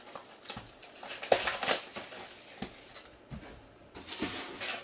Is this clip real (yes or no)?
yes